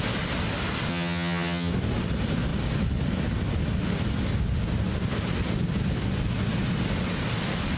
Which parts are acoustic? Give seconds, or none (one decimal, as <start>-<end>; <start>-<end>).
0.0-0.9; 1.7-7.8